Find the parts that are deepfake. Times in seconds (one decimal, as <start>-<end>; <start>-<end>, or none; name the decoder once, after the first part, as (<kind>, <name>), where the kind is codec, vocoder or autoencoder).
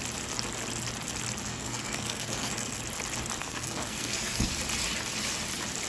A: 1.5-2.8 (codec, SNAC); 3.4-4.5